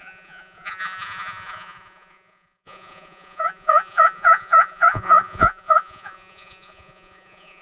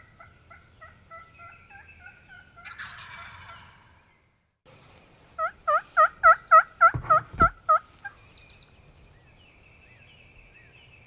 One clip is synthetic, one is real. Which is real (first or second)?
second